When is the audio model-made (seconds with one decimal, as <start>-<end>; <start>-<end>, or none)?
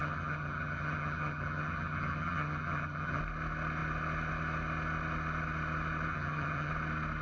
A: 0.0-3.2; 6.1-6.7